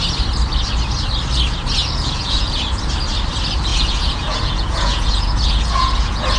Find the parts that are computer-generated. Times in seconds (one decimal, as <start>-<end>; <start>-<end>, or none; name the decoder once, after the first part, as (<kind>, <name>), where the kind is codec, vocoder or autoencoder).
1.8-2.8 (vocoder, Vocos); 3.7-6.4